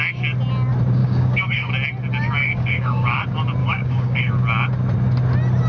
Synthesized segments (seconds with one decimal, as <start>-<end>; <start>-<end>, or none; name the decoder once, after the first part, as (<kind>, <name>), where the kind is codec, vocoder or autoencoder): 1.0-1.7 (codec, DAC); 2.4-3.2; 3.6-4.3